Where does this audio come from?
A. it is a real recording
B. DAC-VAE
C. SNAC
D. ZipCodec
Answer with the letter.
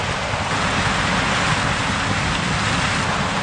A